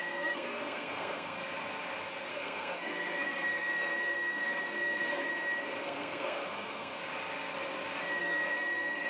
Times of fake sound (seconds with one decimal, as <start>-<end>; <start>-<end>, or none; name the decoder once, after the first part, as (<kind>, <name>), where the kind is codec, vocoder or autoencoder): 0.0-1.4 (codec, SNAC); 2.3-5.3; 5.8-7.0; 8.2-9.1